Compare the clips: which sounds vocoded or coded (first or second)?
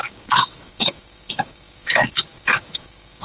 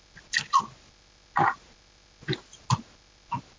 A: first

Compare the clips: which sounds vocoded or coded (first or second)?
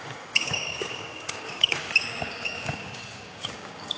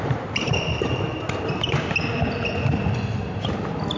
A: first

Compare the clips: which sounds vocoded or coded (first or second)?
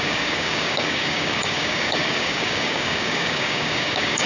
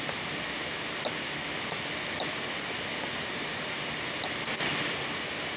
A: first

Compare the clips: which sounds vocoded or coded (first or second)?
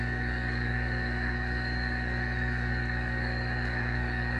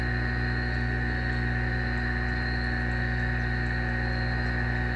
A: first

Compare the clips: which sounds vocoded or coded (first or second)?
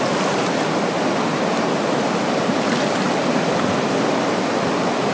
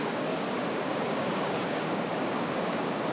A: second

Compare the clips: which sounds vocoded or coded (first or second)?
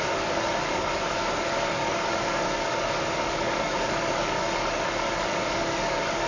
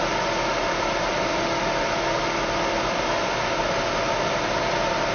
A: first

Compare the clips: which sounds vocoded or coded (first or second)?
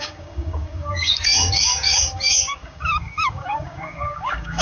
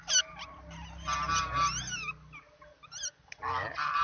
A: first